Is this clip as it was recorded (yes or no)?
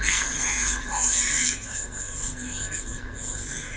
no